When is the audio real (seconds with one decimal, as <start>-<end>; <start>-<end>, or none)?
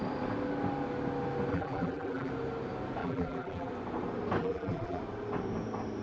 0.0-1.5; 2.3-3.0; 3.7-4.4; 5.0-6.0